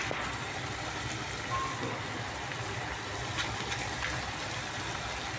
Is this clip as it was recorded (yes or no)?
yes